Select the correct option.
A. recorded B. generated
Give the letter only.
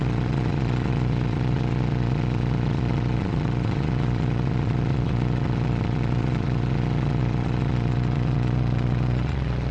B